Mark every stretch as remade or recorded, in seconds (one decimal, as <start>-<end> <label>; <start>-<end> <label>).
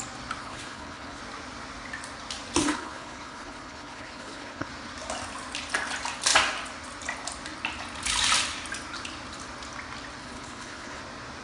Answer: 0.0-0.4 recorded; 0.4-1.2 remade; 1.2-2.6 recorded; 2.6-4.7 remade; 4.7-10.2 recorded; 10.2-11.0 remade; 11.0-11.4 recorded